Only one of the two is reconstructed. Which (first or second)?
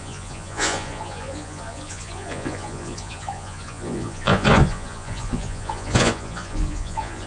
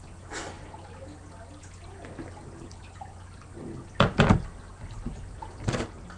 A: first